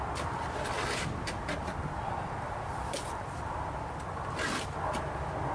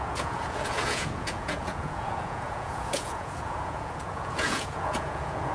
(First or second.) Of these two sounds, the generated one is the second